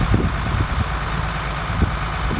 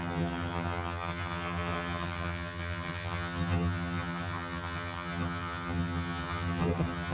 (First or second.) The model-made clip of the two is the second